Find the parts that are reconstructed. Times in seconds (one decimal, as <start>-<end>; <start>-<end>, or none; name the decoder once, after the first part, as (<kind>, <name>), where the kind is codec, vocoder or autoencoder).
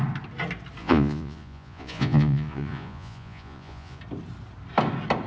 0.8-4.0 (vocoder, Vocos)